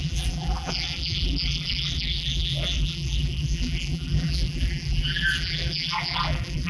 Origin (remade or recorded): remade